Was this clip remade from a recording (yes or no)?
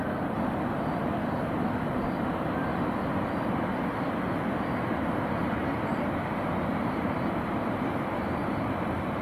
no